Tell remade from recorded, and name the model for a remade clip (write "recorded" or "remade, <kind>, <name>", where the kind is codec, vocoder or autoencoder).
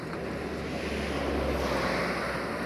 recorded